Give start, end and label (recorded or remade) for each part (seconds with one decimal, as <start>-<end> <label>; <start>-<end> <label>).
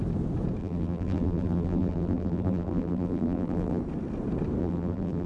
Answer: 0.0-0.6 recorded; 0.6-3.8 remade; 3.8-4.6 recorded; 4.6-5.3 remade